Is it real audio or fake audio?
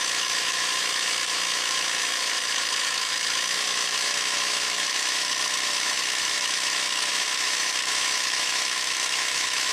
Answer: fake